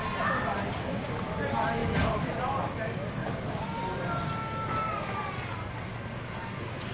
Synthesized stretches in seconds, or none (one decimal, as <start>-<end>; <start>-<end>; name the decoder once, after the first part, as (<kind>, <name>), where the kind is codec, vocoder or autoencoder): none